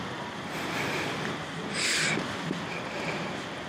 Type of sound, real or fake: real